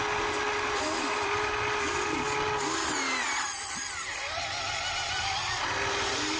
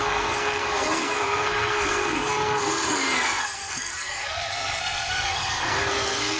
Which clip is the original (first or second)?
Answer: first